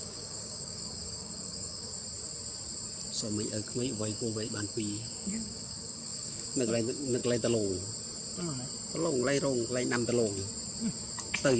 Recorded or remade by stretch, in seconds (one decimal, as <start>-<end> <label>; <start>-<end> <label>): 0.0-1.9 remade; 1.9-3.2 recorded; 3.2-7.2 remade; 7.2-11.6 recorded